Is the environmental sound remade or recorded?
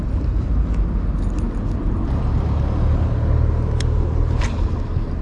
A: recorded